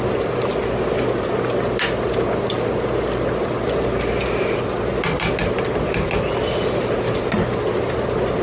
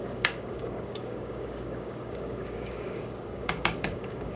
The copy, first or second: second